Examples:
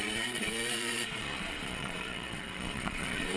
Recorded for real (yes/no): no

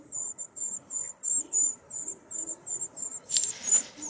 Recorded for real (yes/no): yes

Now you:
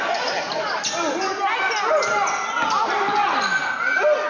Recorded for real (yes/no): yes